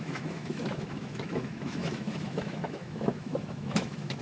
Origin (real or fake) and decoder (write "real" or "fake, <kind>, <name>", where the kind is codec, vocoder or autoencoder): fake, autoencoder, DAC-VAE